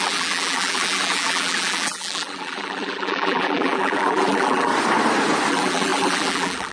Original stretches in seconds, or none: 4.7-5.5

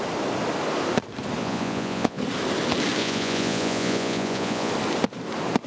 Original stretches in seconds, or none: 0.0-1.4; 2.2-3.0; 4.7-5.7

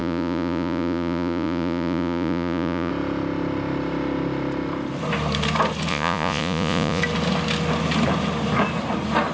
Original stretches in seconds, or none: 2.9-5.9; 7.0-9.3

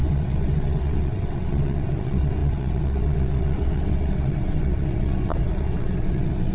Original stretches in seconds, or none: none

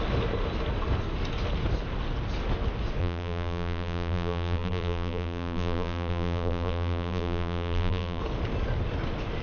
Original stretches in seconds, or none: 0.0-3.0; 8.2-9.4

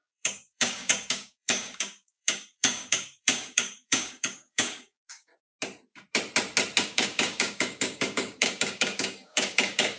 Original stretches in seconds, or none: 5.3-6.8